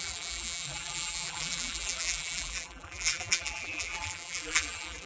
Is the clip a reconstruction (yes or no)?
yes